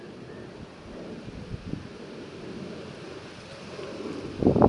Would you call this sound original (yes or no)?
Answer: yes